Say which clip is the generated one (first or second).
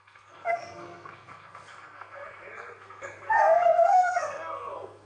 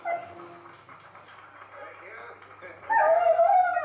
first